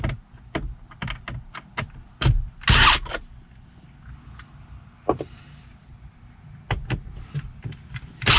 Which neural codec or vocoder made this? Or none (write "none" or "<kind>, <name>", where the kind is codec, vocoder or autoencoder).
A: none